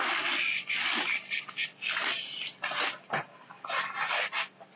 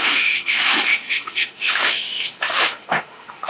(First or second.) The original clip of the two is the first